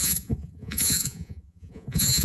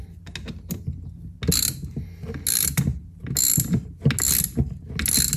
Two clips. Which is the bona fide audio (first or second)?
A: second